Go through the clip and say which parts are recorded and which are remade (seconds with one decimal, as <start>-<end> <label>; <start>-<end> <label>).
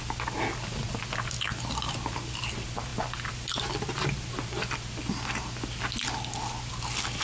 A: 0.0-7.2 recorded